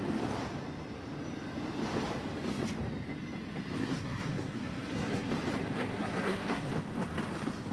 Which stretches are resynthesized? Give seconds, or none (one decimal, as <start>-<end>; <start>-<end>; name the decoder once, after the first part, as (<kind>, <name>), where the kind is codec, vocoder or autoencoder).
3.8-5.3 (codec, SNAC); 5.7-6.7